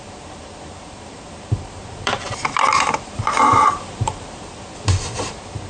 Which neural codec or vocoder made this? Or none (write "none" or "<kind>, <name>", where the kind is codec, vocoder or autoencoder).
vocoder, BigVGAN v2